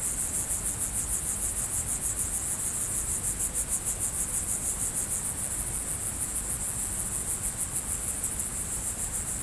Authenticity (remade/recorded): recorded